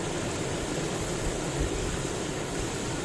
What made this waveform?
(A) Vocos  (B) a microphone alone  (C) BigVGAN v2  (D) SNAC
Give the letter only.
C